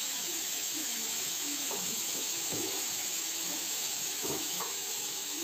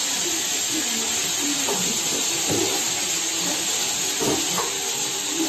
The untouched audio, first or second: second